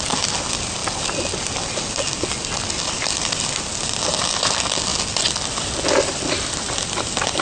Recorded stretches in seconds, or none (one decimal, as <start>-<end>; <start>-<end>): 0.0-7.4